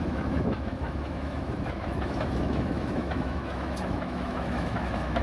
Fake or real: fake